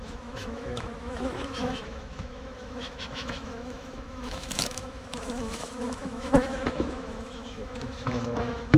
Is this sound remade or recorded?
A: remade